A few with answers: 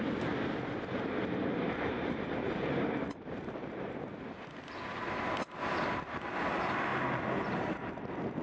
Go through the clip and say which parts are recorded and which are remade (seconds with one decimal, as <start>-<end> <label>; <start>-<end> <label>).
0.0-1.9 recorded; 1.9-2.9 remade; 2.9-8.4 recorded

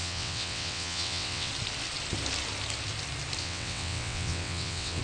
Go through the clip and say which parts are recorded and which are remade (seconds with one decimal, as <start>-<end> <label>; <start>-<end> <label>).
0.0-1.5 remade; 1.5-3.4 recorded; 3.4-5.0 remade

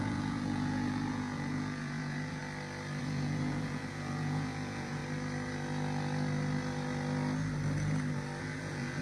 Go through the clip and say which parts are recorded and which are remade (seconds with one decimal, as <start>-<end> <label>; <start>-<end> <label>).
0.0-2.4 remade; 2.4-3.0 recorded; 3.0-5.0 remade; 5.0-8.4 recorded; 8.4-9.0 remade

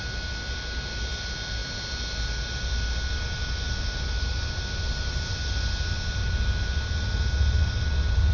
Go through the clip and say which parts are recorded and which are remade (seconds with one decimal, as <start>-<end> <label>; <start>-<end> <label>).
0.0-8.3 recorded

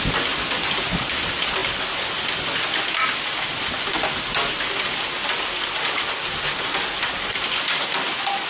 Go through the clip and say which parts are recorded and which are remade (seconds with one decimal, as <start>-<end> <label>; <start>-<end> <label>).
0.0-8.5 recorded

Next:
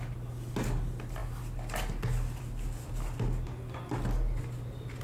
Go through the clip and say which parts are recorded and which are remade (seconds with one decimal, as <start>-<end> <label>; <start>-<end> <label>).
0.0-5.0 recorded